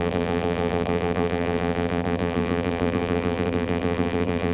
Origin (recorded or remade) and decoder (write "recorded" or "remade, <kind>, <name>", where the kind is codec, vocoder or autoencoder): remade, vocoder, BigVGAN v2